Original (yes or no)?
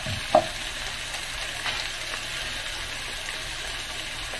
yes